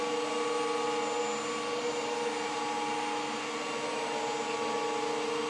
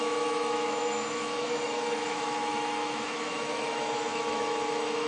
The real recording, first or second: first